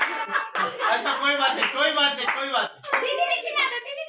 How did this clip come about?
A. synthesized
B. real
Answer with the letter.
B